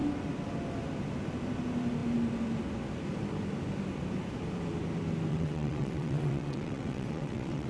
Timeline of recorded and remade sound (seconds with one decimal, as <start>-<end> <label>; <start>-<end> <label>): 0.0-5.3 recorded; 5.3-7.7 remade